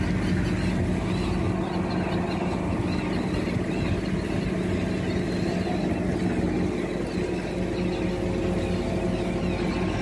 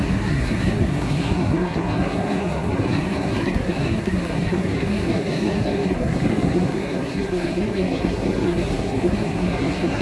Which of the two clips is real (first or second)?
first